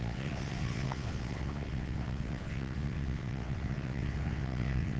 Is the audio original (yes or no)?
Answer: no